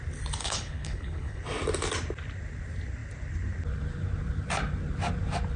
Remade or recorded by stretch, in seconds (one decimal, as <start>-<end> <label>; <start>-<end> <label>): 0.0-0.4 recorded; 0.4-1.4 remade; 1.4-5.6 recorded